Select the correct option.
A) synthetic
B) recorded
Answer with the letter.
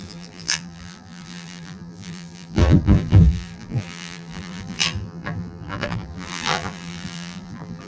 A